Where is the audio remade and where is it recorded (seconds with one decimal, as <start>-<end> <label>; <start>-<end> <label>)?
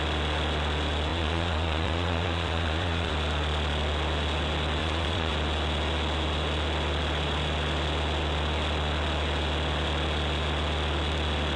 0.0-1.1 recorded; 1.1-3.1 remade; 3.1-4.8 recorded; 4.8-5.3 remade; 5.3-11.6 recorded